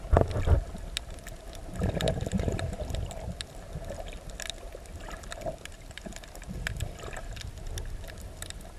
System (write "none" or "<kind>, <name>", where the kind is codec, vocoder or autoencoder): none